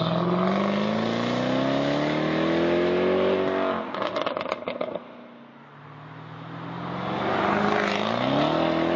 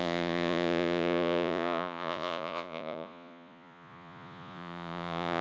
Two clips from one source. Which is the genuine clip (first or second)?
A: first